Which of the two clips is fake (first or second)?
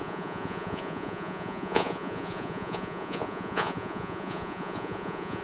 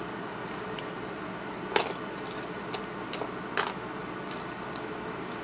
first